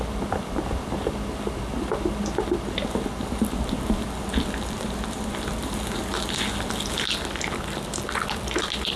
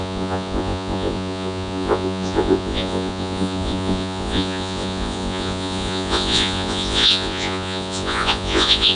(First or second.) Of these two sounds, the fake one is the second